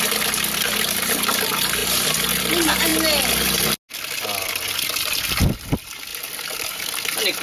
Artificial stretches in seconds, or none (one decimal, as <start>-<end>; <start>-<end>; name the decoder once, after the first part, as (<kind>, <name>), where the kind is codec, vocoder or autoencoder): none